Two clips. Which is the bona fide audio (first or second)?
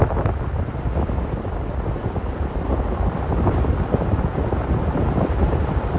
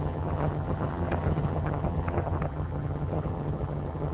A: first